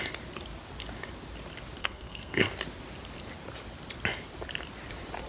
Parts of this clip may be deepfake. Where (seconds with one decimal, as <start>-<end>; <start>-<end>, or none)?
1.8-2.5